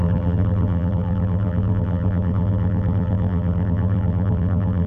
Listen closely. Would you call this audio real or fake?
fake